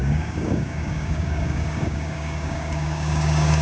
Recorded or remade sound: remade